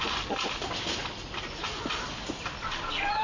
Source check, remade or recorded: recorded